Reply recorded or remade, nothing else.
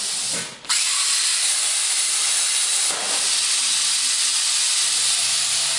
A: recorded